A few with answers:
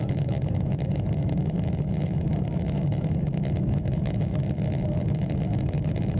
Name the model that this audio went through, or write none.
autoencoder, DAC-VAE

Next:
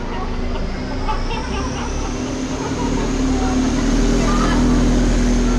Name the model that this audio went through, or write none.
none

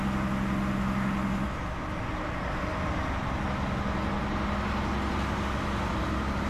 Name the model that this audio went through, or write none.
none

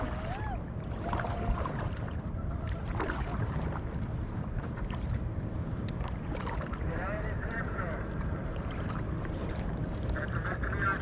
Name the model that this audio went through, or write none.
vocoder, BigVGAN v2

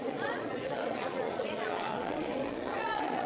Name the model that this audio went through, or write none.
vocoder, Vocos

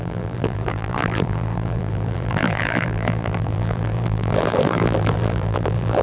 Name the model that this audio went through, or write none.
vocoder, BigVGAN v2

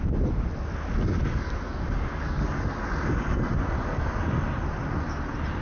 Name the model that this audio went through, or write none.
none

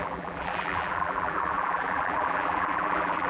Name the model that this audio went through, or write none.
vocoder, BigVGAN v2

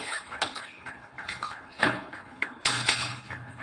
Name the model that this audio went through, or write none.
codec, HILCodec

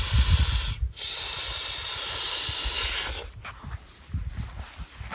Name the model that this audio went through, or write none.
none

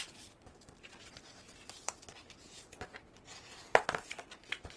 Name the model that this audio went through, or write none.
none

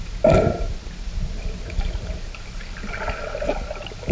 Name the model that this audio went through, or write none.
none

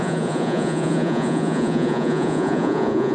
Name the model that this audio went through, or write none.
vocoder, Vocos